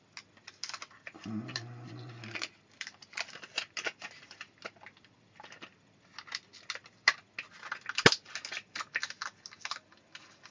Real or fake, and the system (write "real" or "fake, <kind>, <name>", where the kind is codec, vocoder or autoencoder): real